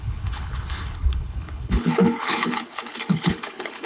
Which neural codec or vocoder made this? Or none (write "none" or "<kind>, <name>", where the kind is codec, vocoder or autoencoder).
codec, HILCodec